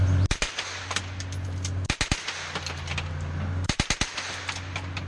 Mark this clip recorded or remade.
recorded